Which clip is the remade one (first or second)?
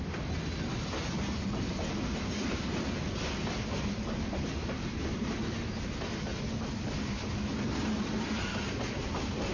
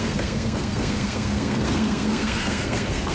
second